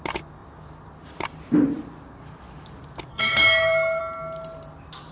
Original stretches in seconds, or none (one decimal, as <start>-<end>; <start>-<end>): 0.0-3.1; 4.0-5.1